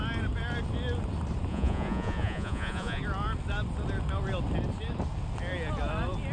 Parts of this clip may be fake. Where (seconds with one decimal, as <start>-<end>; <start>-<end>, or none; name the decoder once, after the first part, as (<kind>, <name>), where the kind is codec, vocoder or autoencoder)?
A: 1.5-3.0 (vocoder, Vocos)